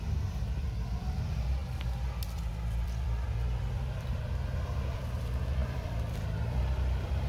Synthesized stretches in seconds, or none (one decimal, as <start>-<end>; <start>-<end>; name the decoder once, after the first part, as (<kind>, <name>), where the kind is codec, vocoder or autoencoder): 0.0-1.6 (vocoder, BigVGAN v2); 2.5-7.3